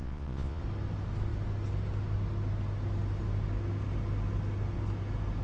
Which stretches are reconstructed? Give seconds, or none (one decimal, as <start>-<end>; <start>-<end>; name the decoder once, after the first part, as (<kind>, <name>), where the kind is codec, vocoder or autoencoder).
0.0-0.6 (vocoder, Vocos)